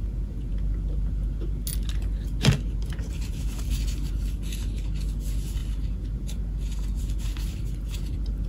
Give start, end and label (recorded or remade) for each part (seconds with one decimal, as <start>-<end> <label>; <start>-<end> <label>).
0.0-8.5 recorded